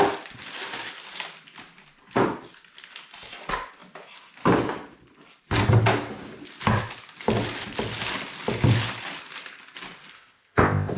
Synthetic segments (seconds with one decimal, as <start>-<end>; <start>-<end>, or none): 10.1-11.0